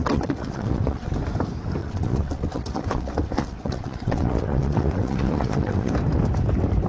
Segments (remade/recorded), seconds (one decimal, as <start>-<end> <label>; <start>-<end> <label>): 0.0-1.1 remade; 1.1-1.8 recorded; 1.8-5.9 remade; 5.9-6.9 recorded